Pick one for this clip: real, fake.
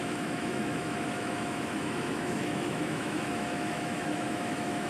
fake